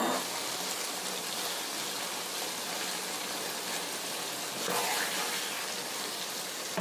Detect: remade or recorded recorded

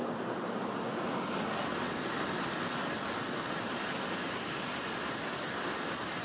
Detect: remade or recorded recorded